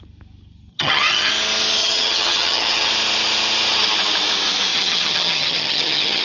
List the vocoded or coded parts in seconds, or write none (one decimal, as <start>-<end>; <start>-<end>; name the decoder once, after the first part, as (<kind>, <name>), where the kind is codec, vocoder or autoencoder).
0.7-1.3 (vocoder, HiFi-GAN); 1.8-2.9; 4.7-6.2